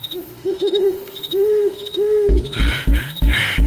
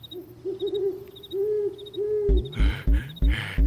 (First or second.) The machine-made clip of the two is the first